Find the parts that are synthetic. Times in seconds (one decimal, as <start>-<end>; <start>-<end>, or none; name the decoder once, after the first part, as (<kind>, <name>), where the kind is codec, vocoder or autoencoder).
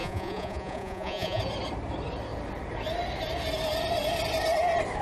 0.0-1.4 (vocoder, Vocos)